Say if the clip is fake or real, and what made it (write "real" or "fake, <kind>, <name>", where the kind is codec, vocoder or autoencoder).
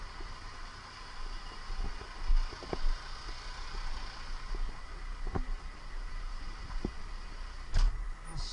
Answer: real